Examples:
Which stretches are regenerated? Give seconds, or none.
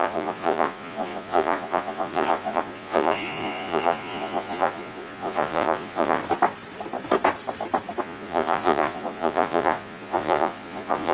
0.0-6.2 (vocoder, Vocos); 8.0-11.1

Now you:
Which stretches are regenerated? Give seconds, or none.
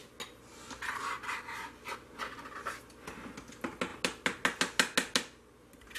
none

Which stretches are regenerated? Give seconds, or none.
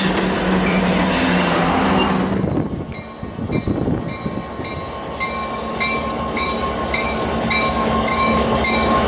5.4-9.1 (codec, DAC)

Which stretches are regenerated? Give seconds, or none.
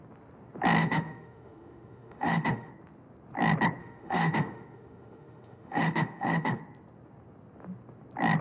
0.8-2.7 (autoencoder, DAC-VAE); 3.8-6.6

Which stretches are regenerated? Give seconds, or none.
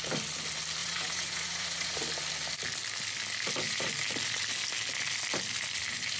0.8-2.0 (vocoder, Vocos)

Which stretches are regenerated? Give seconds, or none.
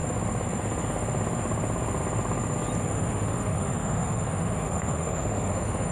2.8-5.9 (autoencoder, DAC-VAE)